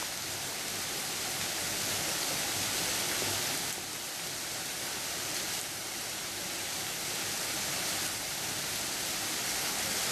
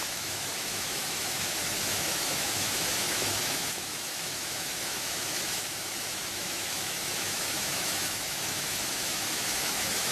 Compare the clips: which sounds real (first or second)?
first